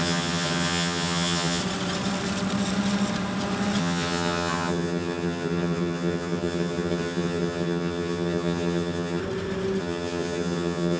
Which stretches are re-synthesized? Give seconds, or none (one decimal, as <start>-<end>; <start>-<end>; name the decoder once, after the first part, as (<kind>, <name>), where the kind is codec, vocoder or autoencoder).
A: 0.0-1.6 (vocoder, HiFi-GAN); 3.8-9.2; 9.8-11.0